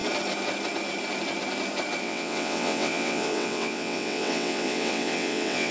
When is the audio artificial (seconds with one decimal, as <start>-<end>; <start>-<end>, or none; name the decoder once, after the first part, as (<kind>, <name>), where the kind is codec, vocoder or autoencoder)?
2.0-5.7 (vocoder, WaveNeXt)